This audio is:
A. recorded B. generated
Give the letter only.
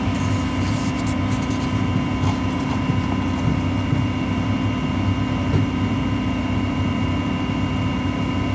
A